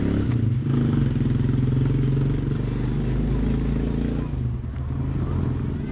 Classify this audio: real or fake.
real